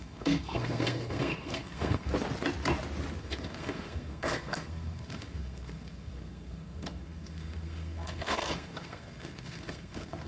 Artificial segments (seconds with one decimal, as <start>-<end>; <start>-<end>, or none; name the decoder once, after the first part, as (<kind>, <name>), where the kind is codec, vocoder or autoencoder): 0.0-2.1 (codec, SNAC); 3.2-10.3